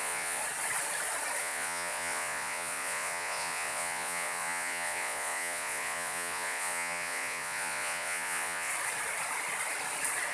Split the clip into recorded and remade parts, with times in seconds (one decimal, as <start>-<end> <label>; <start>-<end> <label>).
0.0-0.4 remade; 0.4-1.4 recorded; 1.4-8.7 remade; 8.7-10.3 recorded